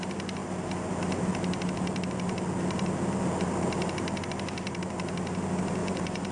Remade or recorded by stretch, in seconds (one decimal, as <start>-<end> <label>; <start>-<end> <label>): 0.0-5.8 recorded; 5.8-6.3 remade